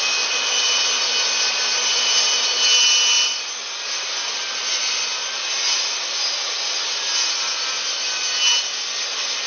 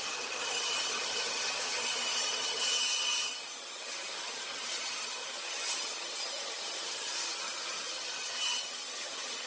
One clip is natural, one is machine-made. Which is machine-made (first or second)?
second